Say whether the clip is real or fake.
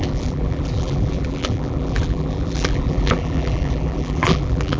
fake